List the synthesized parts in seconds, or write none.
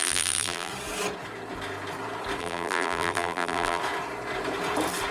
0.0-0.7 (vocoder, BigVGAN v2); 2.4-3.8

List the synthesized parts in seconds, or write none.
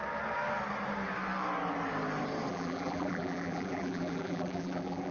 2.5-5.1 (vocoder, BigVGAN v2)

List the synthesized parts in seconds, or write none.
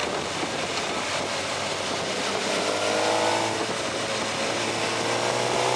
none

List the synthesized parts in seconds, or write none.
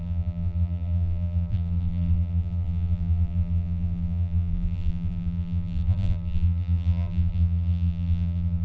0.0-8.6 (vocoder, BigVGAN v2)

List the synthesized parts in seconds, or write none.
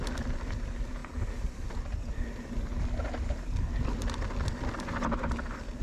none